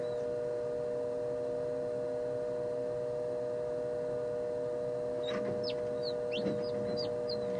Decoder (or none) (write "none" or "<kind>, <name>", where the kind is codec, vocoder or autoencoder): none